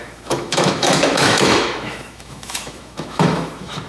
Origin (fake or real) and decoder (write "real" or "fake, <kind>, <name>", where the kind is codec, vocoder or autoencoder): fake, autoencoder, DAC-VAE